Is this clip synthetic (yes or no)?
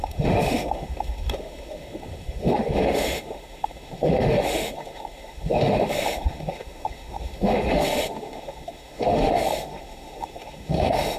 yes